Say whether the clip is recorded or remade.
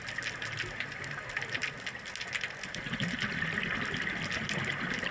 recorded